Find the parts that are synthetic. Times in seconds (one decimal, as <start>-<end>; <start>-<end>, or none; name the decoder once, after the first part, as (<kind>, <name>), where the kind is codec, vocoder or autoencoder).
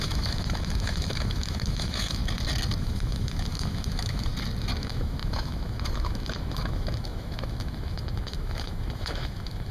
0.0-2.2 (autoencoder, DAC-VAE); 2.8-4.3; 4.8-9.7